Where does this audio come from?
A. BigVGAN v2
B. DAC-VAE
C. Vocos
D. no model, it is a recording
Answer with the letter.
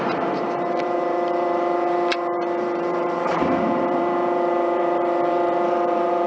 A